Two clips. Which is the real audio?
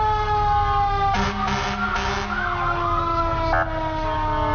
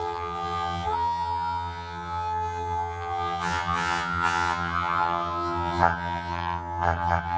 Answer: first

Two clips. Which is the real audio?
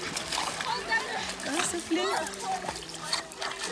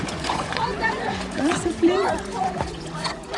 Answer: first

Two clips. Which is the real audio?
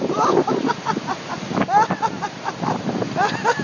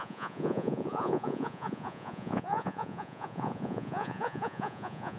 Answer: first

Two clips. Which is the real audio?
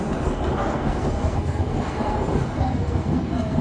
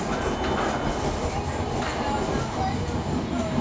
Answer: second